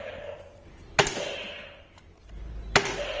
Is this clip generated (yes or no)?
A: no